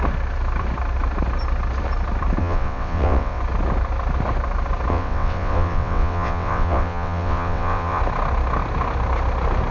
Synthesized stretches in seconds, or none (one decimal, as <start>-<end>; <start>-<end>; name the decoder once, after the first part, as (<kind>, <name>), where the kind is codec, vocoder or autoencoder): 2.4-3.4 (vocoder, WaveNeXt); 4.9-8.0